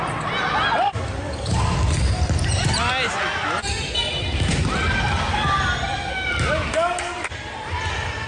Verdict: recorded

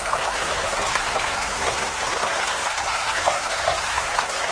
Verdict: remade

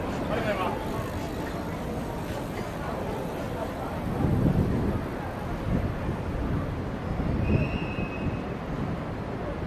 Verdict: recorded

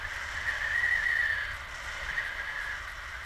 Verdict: recorded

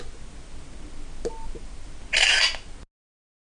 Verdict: recorded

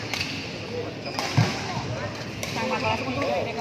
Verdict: recorded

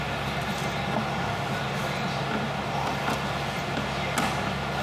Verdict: recorded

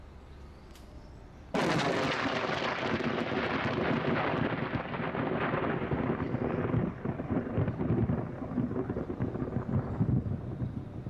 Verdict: recorded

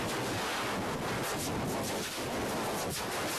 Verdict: recorded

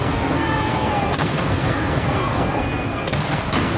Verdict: remade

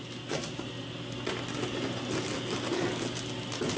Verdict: recorded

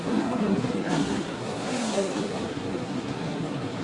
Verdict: remade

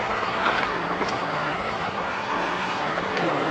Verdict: remade